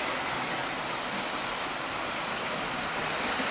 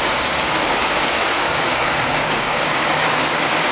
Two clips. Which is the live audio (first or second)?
first